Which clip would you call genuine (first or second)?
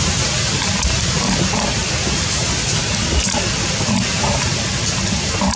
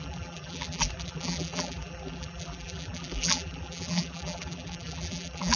first